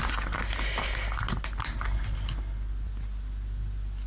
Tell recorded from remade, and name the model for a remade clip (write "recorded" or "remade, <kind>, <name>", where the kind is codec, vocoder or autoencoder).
recorded